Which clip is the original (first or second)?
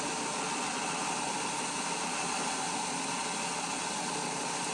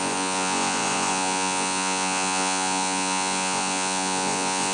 first